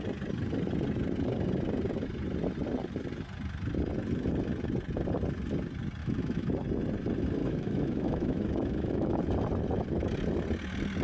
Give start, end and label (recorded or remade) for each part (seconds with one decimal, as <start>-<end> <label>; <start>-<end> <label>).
0.0-6.0 recorded; 6.0-6.5 remade; 6.5-7.4 recorded; 7.4-9.2 remade; 9.2-11.0 recorded